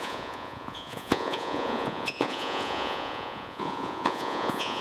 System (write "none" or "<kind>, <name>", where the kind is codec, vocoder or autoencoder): vocoder, Vocos